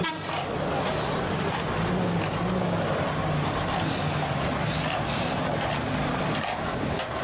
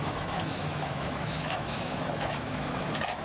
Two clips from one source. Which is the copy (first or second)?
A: second